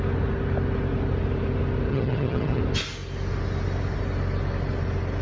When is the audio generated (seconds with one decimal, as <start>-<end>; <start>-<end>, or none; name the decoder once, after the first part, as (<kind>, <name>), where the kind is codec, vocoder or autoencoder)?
1.9-2.6 (vocoder, HiFi-GAN)